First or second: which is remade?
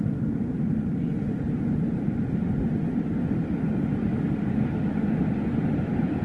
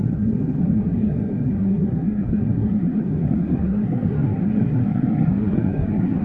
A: second